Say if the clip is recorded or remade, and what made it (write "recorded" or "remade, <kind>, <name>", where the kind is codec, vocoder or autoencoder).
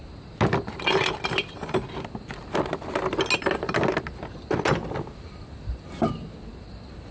recorded